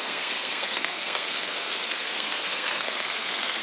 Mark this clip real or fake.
fake